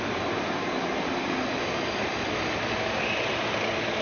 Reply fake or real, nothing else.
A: real